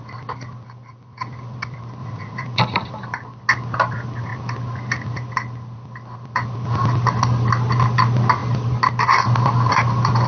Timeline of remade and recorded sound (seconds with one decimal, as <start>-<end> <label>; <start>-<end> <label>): 0.0-2.0 recorded; 2.0-2.6 remade; 2.6-10.3 recorded